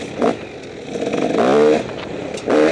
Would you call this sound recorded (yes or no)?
yes